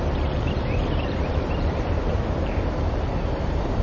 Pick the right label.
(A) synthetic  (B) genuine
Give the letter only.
A